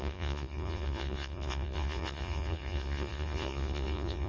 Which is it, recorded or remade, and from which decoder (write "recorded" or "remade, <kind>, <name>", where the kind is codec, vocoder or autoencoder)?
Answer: remade, vocoder, Vocos